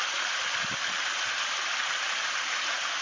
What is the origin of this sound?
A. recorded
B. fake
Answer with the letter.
A